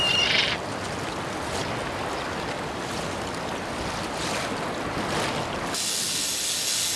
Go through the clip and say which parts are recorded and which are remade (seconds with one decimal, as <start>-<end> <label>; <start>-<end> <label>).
0.0-7.0 recorded